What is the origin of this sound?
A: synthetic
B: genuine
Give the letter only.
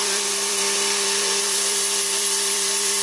A